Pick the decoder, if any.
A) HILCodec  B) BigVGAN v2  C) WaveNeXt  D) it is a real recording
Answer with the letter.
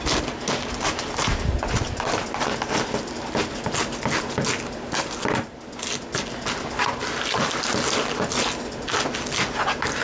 D